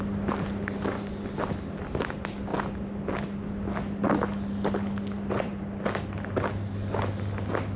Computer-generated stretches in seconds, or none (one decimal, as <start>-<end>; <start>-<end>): none